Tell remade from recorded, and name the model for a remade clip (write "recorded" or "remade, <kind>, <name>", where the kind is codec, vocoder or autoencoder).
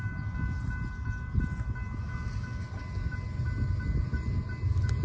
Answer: recorded